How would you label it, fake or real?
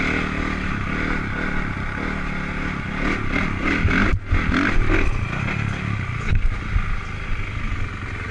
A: real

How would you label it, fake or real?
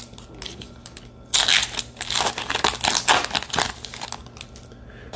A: real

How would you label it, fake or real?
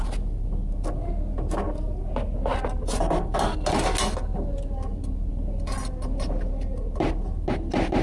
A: real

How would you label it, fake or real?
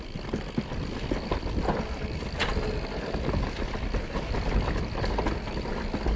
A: real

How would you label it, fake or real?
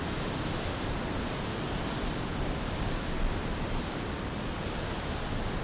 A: real